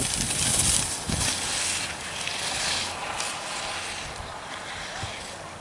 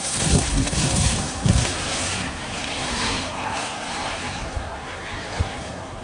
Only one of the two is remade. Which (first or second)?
second